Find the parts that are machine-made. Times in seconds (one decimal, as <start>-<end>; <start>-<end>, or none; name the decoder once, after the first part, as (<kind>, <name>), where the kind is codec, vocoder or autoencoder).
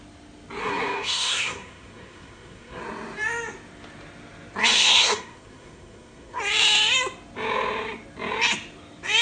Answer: 0.6-2.8 (codec, SNAC); 4.6-6.4